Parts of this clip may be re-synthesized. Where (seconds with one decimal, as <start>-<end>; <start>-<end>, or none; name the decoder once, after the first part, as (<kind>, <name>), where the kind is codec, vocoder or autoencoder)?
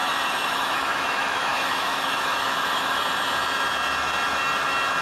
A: 0.0-3.0 (autoencoder, DAC-VAE)